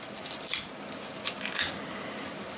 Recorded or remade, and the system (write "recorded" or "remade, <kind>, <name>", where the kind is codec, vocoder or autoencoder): recorded